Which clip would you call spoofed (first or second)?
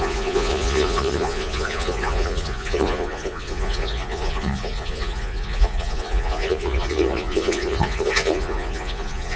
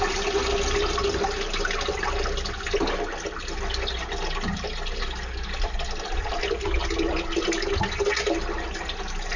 first